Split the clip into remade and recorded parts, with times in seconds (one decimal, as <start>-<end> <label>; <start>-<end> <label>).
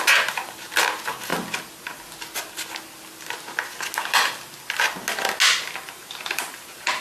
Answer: 0.0-1.3 remade; 1.3-5.5 recorded; 5.5-7.0 remade